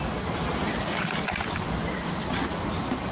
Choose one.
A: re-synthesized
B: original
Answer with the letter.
B